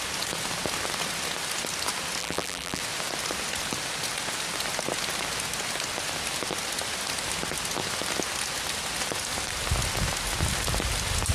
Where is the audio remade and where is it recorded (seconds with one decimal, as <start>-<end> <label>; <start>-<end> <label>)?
0.0-2.2 recorded; 2.2-2.8 remade; 2.8-11.3 recorded